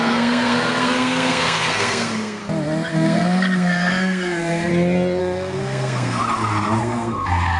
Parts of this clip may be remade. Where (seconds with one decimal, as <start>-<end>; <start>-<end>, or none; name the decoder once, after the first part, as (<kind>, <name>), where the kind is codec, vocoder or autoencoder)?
0.0-2.4 (codec, SNAC); 2.9-4.7; 5.2-6.2; 6.8-7.6